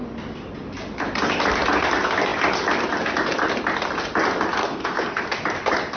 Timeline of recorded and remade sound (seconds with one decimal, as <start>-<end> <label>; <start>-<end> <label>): 0.0-4.6 recorded; 4.6-5.2 remade; 5.2-6.0 recorded